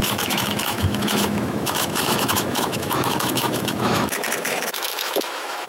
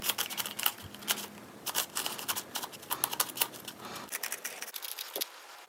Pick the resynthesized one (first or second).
first